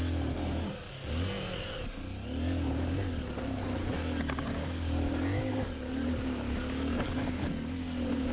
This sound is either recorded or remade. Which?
recorded